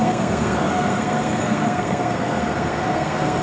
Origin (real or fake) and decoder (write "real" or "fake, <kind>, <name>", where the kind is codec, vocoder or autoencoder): fake, codec, SNAC